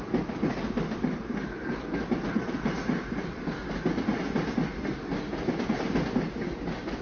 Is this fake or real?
real